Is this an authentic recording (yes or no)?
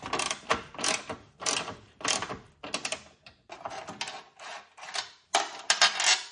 yes